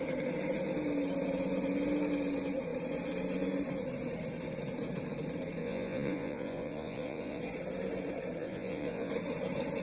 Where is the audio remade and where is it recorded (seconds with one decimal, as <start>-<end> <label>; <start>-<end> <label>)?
0.0-5.6 recorded; 5.6-7.4 remade; 7.4-8.4 recorded; 8.4-9.1 remade; 9.1-9.8 recorded